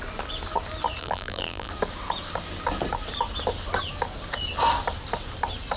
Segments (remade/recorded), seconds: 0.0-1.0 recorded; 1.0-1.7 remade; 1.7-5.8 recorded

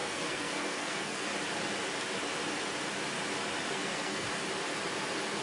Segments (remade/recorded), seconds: 0.0-1.3 remade; 1.3-3.7 recorded; 3.7-4.3 remade; 4.3-5.4 recorded

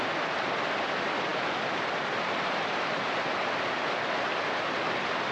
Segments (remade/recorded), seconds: 0.0-5.3 recorded

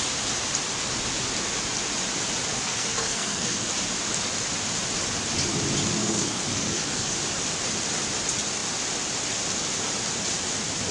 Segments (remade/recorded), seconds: 0.0-2.5 recorded; 2.5-3.7 remade; 3.7-6.0 recorded; 6.0-7.1 remade; 7.1-10.9 recorded

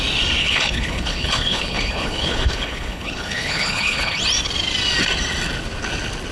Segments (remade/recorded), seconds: 0.0-0.4 recorded; 0.4-4.2 remade; 4.2-6.3 recorded

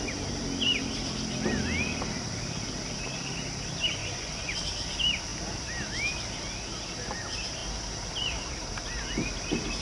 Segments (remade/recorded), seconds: 0.0-4.0 recorded; 4.0-4.6 remade; 4.6-9.8 recorded